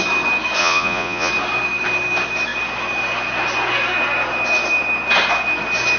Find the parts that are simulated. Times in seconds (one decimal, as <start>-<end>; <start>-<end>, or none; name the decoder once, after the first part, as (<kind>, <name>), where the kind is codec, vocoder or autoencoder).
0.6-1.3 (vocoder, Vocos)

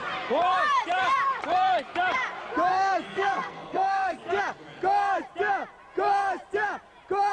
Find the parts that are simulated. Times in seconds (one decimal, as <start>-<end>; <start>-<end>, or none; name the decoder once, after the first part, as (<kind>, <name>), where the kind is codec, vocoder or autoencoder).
2.7-4.4 (codec, SNAC)

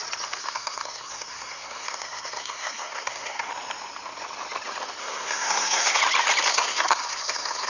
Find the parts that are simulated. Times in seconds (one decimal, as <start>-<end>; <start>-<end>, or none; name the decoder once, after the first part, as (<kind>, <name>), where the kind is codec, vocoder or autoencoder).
0.4-3.5 (codec, SNAC); 5.0-6.0; 6.5-7.7

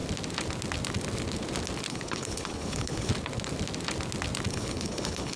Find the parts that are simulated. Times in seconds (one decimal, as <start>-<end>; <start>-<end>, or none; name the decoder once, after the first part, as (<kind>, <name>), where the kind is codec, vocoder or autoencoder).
1.9-3.1 (codec, HILCodec); 4.5-5.4

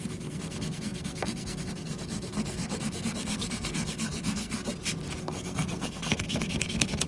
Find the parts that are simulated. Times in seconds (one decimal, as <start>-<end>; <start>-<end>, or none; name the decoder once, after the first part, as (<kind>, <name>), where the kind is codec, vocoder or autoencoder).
0.0-4.6 (codec, SNAC); 5.2-7.1